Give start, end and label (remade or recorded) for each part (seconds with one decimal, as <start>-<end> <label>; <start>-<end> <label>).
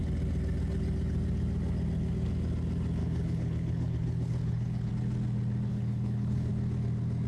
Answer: 0.0-3.0 recorded; 3.0-4.9 remade; 4.9-5.7 recorded; 5.7-6.5 remade; 6.5-7.3 recorded